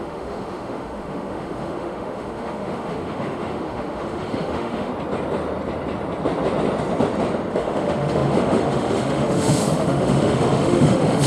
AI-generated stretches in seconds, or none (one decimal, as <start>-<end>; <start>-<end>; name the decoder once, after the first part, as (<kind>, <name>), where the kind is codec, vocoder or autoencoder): 0.0-4.9 (autoencoder, DAC-VAE); 7.5-11.3